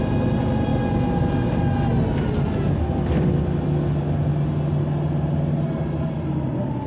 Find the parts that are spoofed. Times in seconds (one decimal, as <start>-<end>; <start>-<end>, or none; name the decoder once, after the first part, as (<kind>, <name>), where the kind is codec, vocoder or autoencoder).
none